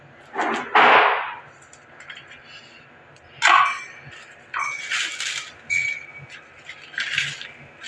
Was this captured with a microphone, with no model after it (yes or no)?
yes